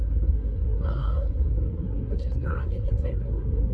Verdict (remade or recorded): remade